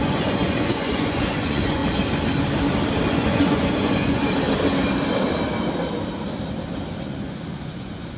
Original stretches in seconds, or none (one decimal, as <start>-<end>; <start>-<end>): 1.8-3.1; 4.2-7.0